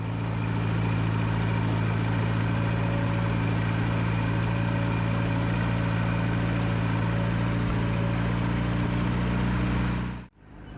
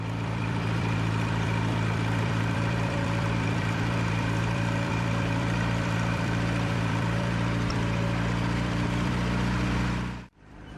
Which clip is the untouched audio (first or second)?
first